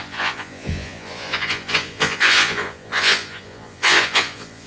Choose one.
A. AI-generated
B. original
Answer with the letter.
A